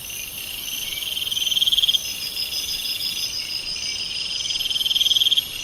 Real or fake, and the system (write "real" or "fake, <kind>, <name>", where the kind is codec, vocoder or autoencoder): real